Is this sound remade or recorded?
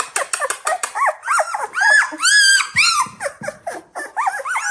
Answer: recorded